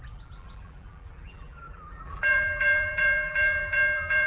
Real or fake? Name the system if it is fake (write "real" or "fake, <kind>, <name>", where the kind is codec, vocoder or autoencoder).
fake, vocoder, BigVGAN v2